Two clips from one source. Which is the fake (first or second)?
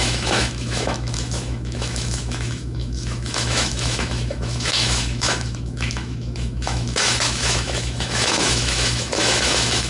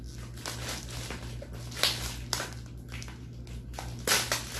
first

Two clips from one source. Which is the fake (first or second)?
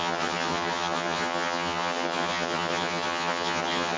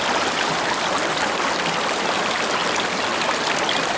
first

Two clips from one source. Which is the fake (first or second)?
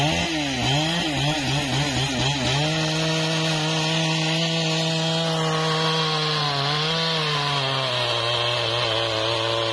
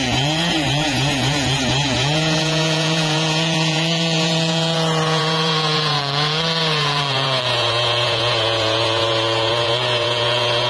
second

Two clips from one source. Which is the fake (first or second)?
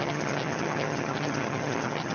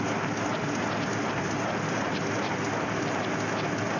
first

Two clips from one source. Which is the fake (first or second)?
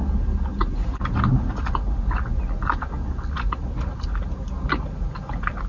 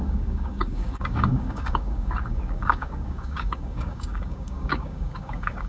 second